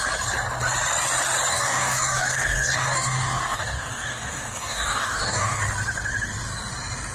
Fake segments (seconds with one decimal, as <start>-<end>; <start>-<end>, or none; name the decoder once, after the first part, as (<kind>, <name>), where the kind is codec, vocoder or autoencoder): 1.5-5.6 (codec, DAC)